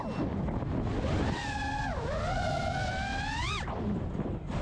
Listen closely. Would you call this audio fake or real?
real